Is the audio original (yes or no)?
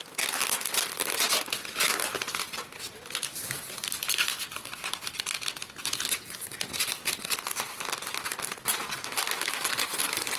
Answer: yes